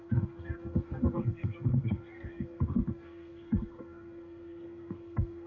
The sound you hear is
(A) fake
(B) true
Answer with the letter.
A